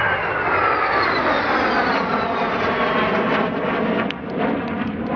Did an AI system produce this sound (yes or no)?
no